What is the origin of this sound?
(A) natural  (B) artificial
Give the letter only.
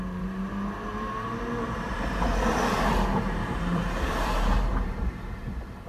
B